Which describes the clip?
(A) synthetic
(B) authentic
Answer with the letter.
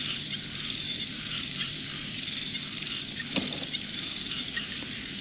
A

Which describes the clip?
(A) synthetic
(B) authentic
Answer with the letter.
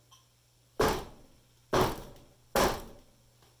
B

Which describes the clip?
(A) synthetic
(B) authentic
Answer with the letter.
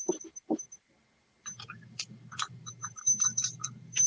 A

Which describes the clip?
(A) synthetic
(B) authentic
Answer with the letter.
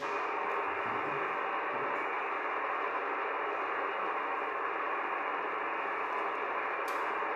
B